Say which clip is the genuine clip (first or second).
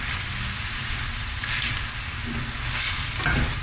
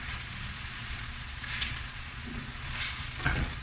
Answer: first